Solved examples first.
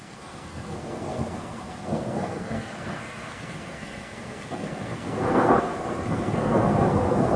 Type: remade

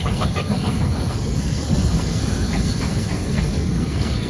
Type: remade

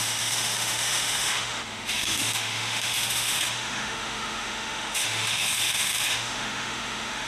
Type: remade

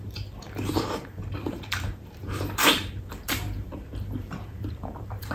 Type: remade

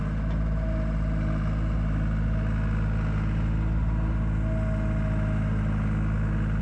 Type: recorded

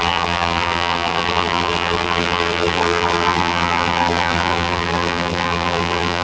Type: remade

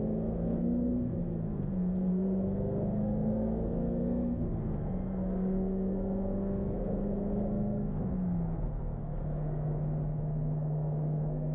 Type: remade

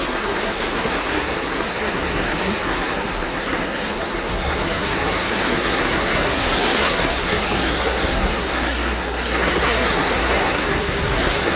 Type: remade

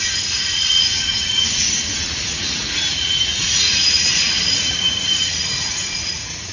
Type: remade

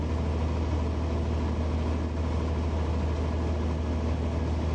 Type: recorded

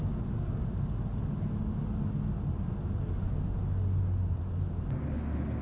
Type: recorded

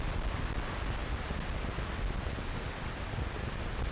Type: recorded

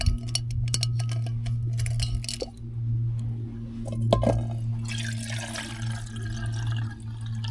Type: recorded